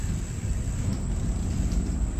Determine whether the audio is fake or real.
fake